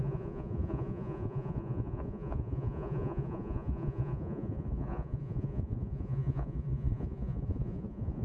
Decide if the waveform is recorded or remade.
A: remade